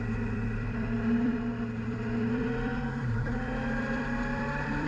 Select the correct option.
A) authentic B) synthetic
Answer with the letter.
B